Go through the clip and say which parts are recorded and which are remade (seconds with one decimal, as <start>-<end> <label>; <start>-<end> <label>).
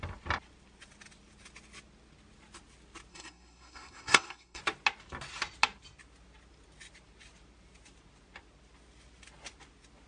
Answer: 0.0-3.1 recorded; 3.1-4.6 remade; 4.6-10.1 recorded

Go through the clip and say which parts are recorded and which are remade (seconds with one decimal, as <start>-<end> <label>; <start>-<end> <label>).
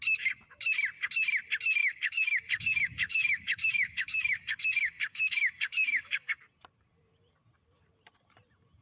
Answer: 0.0-1.8 recorded; 1.8-6.4 remade; 6.4-8.8 recorded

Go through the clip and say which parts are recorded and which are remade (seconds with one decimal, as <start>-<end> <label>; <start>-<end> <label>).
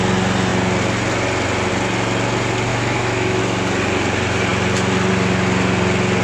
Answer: 0.0-2.7 recorded; 2.7-3.4 remade; 3.4-6.2 recorded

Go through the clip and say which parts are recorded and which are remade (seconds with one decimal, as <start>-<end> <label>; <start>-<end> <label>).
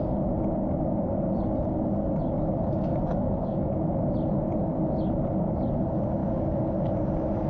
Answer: 0.0-2.9 recorded; 2.9-3.7 remade; 3.7-7.5 recorded